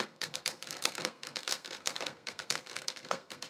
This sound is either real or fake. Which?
fake